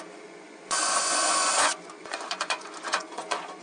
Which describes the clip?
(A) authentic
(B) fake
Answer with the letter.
B